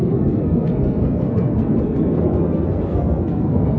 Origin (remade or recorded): remade